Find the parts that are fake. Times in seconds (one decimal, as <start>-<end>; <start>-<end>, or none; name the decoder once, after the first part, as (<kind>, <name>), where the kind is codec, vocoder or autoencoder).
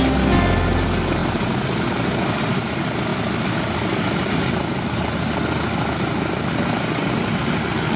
none